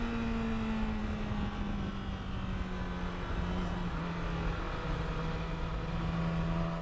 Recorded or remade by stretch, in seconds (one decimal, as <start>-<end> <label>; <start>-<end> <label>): 0.0-6.8 recorded